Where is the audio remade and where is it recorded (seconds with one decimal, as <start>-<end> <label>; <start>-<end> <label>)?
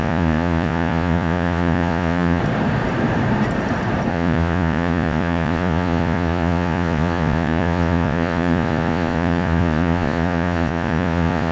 0.0-2.4 remade; 2.4-4.1 recorded; 4.1-11.5 remade